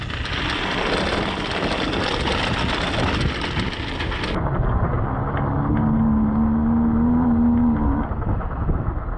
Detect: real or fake real